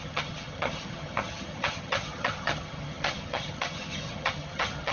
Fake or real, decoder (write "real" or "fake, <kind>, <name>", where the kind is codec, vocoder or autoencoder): fake, vocoder, HiFi-GAN